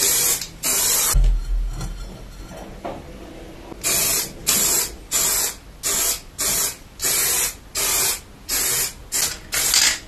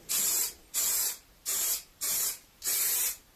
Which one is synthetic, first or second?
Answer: second